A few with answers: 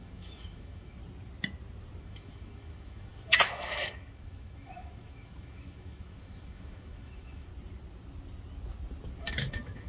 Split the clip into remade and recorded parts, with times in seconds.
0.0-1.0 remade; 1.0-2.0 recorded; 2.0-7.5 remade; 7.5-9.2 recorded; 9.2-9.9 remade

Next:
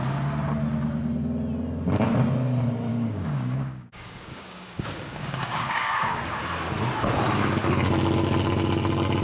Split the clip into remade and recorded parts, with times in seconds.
0.0-2.9 recorded; 2.9-6.4 remade; 6.4-9.2 recorded

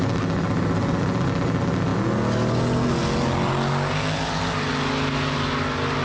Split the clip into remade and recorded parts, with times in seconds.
0.0-6.0 recorded

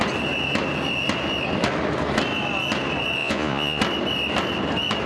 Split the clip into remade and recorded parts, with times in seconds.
0.0-3.2 recorded; 3.2-3.8 remade; 3.8-5.1 recorded